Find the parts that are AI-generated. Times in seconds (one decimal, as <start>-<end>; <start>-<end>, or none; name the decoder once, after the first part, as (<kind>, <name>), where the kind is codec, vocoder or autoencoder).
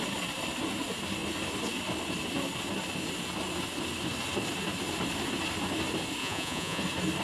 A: 6.2-6.8 (vocoder, Vocos)